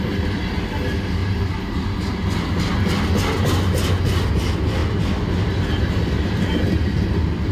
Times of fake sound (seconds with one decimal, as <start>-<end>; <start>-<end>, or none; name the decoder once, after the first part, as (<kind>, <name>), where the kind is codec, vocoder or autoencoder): 1.2-2.0 (vocoder, BigVGAN v2)